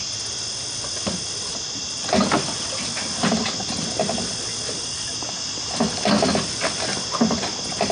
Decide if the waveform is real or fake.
real